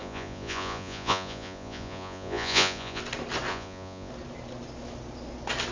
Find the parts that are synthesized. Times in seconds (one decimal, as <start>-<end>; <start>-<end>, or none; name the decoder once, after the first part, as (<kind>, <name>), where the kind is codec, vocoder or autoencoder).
0.0-3.0 (vocoder, Vocos); 3.5-4.1